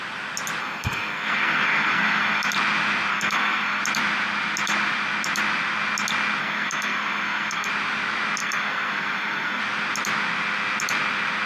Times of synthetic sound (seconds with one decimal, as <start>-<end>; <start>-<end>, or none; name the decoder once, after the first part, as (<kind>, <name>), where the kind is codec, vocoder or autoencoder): 0.6-2.5 (codec, SNAC); 3.1-3.8; 6.4-7.7; 8.4-9.6

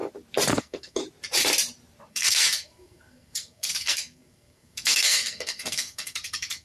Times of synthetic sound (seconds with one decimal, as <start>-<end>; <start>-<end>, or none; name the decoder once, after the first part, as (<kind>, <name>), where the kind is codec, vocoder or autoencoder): 0.6-1.0 (codec, SNAC); 2.1-6.6

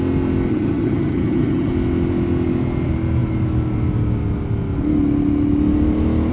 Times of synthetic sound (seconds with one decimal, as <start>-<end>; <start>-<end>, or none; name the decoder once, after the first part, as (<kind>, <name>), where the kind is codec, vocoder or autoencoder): 0.5-1.7 (vocoder, HiFi-GAN)

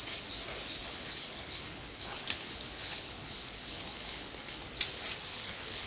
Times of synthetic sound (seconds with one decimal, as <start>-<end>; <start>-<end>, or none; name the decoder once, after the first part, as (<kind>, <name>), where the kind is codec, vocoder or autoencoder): 0.8-4.3 (codec, HILCodec); 5.3-5.9